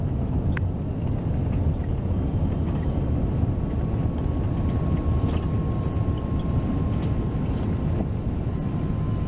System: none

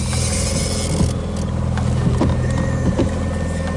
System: none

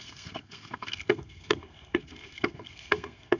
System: codec, SNAC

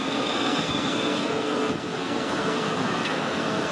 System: codec, SNAC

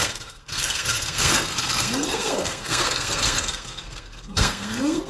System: codec, SNAC